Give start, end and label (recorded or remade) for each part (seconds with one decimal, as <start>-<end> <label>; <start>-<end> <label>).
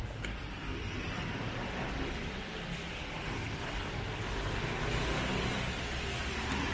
0.0-3.4 recorded; 3.4-4.3 remade; 4.3-6.7 recorded